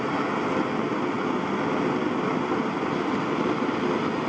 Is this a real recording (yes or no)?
yes